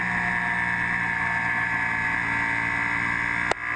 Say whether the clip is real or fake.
real